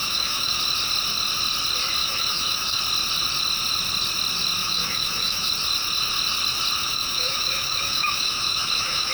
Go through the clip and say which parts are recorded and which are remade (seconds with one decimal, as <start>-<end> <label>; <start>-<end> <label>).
0.0-0.6 remade; 0.6-2.0 recorded; 2.0-2.8 remade; 2.8-4.6 recorded; 4.6-5.5 remade; 5.5-6.8 recorded; 6.8-9.1 remade